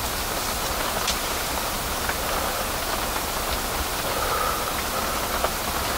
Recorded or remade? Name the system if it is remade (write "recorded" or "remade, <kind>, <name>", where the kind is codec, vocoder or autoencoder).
recorded